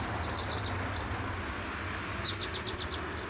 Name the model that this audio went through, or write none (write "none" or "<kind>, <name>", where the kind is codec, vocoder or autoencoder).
none